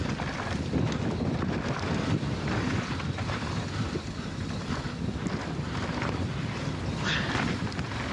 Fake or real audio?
real